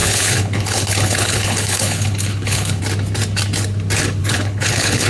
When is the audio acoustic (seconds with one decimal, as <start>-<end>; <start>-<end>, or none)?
2.8-4.2

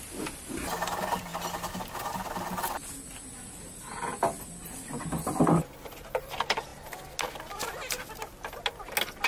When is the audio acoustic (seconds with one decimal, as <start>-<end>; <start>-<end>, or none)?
0.0-9.3

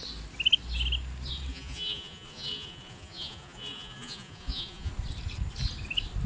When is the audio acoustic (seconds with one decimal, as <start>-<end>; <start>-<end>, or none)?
0.0-1.5; 4.9-6.3

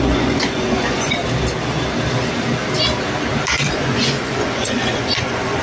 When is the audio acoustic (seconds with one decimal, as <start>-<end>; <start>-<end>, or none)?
1.2-3.7

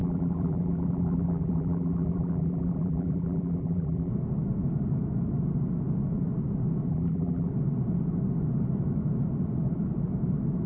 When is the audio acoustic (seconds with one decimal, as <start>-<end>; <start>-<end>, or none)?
4.1-6.9; 7.5-10.7